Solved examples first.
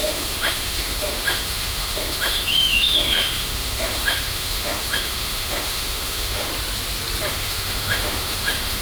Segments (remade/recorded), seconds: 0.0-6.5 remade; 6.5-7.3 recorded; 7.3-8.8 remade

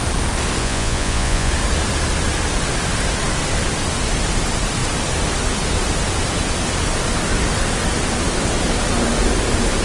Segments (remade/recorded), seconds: 0.0-0.6 recorded; 0.6-1.5 remade; 1.5-9.8 recorded

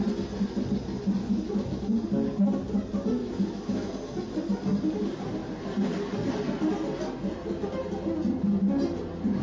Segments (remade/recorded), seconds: 0.0-1.2 recorded; 1.2-1.8 remade; 1.8-3.2 recorded; 3.2-3.9 remade; 3.9-9.4 recorded

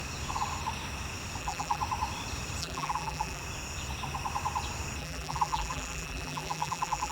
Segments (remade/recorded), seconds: 0.0-1.4 recorded; 1.4-1.8 remade; 1.8-2.6 recorded; 2.6-3.4 remade; 3.4-5.0 recorded; 5.0-7.1 remade

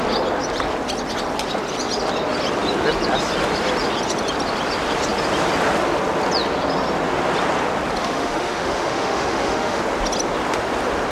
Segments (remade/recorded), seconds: 0.0-8.0 recorded; 8.0-9.8 remade; 9.8-11.1 recorded

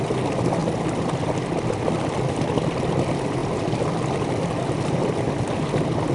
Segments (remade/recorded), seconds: 0.0-6.1 recorded

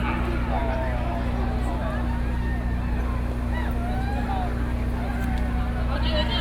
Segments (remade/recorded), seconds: 0.0-6.4 recorded

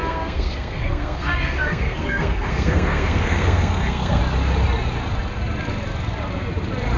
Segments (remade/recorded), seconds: 0.0-4.2 remade; 4.2-7.0 recorded